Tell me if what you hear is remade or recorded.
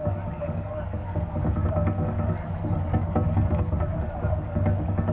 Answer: remade